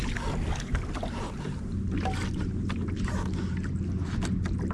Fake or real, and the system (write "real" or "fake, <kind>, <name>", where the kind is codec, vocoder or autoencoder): real